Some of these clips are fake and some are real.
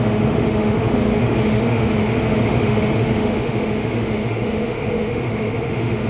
fake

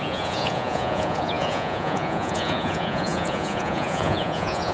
fake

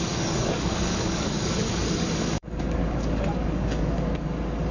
fake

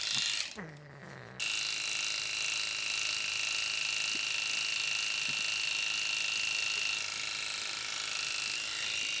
real